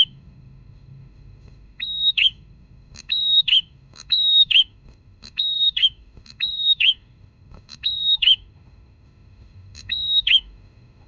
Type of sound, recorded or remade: remade